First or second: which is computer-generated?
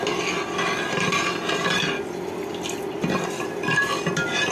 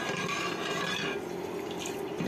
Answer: second